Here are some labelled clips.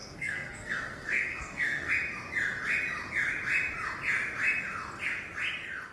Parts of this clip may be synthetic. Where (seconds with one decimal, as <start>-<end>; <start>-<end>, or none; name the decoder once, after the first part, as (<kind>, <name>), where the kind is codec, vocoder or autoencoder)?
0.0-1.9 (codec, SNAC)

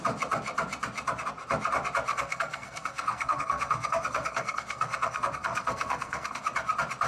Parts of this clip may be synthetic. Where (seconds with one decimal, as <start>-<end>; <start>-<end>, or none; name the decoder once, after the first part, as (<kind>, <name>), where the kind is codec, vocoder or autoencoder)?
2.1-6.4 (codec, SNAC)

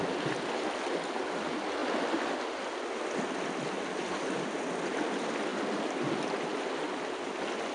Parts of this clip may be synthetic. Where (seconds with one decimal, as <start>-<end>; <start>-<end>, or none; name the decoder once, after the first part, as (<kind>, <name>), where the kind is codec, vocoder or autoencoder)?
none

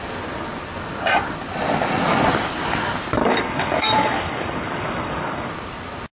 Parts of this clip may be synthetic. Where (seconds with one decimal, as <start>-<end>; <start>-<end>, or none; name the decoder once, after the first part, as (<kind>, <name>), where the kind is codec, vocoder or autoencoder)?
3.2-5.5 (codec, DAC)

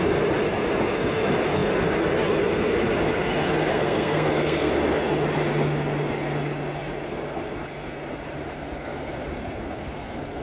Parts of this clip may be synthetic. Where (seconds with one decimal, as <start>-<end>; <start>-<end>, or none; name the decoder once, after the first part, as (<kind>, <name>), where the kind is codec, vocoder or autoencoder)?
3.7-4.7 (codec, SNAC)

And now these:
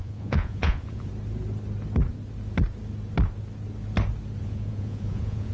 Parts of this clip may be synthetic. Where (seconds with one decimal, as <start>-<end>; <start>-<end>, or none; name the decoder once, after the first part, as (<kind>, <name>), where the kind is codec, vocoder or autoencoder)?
0.0-1.1 (vocoder, Vocos); 4.4-5.5